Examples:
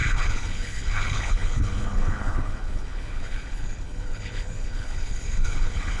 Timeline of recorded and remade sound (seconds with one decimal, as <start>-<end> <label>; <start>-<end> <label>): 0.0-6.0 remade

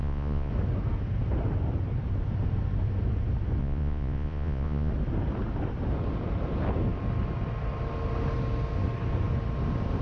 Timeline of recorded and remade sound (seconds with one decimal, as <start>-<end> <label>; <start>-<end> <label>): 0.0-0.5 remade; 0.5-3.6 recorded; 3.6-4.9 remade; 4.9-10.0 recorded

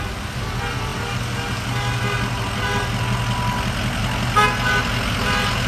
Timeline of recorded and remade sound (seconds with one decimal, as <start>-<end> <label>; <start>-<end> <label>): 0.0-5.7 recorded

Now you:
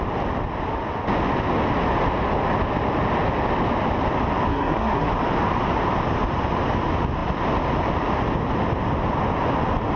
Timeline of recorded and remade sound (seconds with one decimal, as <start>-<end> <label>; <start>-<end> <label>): 0.0-4.5 recorded; 4.5-5.1 remade; 5.1-10.0 recorded

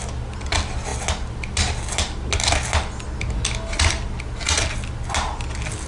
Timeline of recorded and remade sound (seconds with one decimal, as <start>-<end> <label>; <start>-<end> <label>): 0.0-5.9 recorded